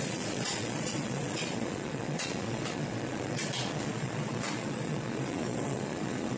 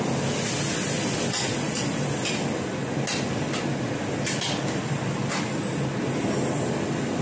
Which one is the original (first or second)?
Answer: second